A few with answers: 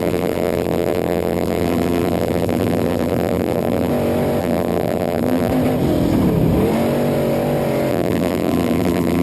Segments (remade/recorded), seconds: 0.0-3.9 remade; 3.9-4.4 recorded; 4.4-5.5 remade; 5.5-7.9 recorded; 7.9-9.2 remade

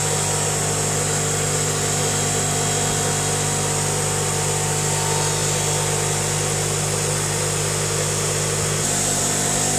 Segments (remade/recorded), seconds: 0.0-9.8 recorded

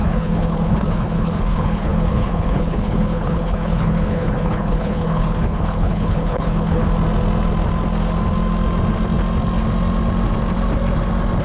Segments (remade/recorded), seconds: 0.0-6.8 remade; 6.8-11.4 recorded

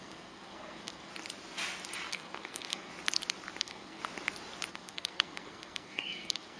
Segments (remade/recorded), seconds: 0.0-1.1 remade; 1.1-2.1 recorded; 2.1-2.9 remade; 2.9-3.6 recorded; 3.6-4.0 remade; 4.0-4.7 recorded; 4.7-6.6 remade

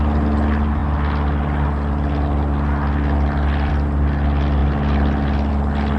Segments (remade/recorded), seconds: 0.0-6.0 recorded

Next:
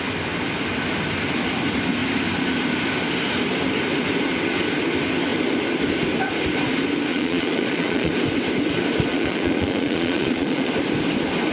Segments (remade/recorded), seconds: 0.0-7.1 recorded; 7.1-8.1 remade; 8.1-9.1 recorded; 9.1-10.7 remade; 10.7-11.5 recorded